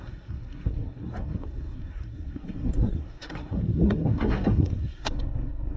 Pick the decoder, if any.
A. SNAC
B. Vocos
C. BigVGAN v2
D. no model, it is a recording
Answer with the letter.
A